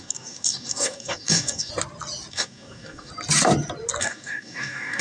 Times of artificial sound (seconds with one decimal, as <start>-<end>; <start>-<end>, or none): 0.0-1.7; 2.3-3.1; 4.0-5.0